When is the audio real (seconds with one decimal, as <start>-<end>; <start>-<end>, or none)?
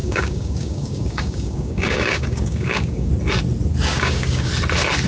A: 3.1-3.9; 4.5-5.1